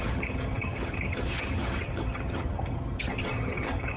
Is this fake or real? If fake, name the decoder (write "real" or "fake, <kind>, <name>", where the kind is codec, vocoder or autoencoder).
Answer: fake, vocoder, HiFi-GAN